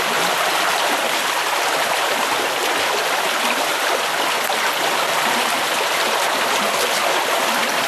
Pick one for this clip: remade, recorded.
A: remade